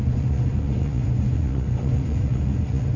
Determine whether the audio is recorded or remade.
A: remade